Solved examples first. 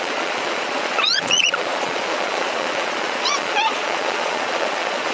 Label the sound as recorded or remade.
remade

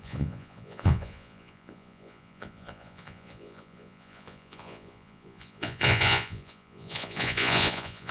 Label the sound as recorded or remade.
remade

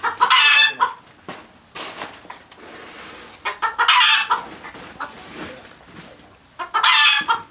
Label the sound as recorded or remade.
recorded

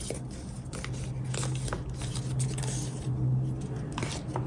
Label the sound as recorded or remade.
recorded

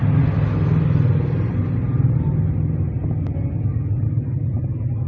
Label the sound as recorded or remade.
recorded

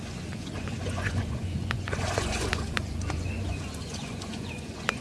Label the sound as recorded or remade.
remade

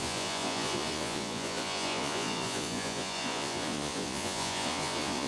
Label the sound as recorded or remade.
remade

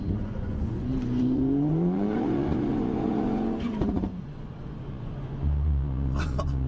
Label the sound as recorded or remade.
remade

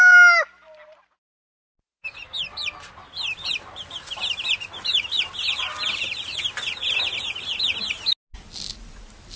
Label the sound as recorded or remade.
recorded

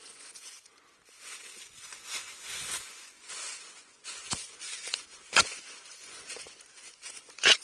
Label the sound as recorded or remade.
remade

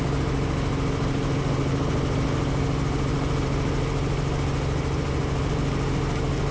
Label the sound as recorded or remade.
recorded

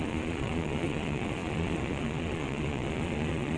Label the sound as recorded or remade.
remade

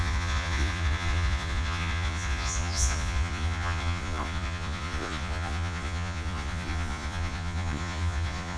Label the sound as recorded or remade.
remade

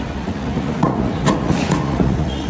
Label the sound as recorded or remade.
remade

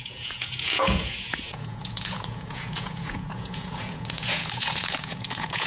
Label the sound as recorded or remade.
remade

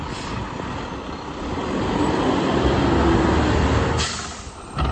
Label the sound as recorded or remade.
recorded